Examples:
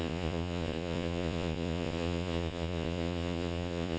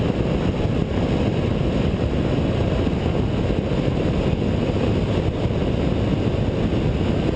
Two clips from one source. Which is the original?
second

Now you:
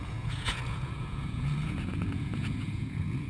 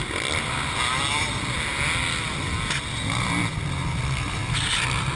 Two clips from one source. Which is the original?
second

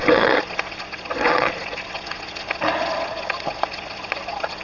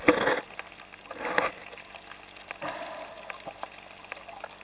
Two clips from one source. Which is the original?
second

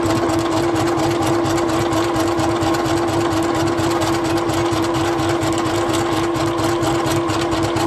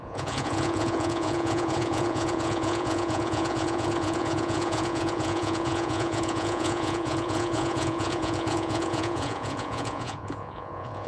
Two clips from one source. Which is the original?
first